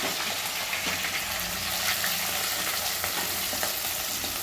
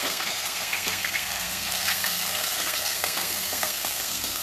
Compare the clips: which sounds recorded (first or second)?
first